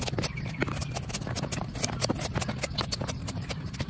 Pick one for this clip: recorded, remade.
recorded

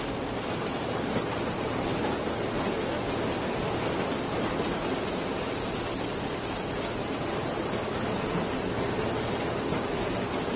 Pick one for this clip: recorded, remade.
recorded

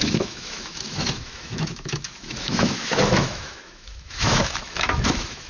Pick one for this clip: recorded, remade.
remade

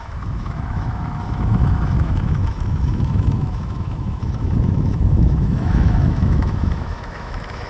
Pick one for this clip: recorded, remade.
remade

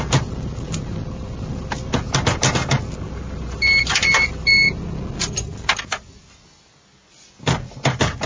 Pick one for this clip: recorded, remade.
recorded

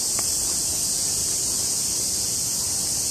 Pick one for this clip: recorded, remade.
recorded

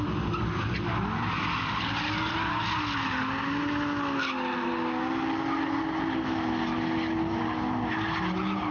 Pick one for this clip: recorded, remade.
recorded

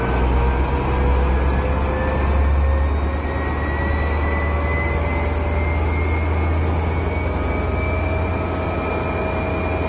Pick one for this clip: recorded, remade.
recorded